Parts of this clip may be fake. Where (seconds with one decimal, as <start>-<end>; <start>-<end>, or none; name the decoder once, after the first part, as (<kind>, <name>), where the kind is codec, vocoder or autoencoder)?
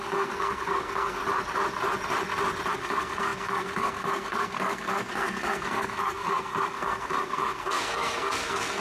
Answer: 0.0-1.2 (codec, SNAC); 2.7-8.8